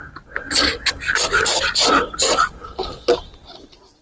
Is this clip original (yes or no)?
yes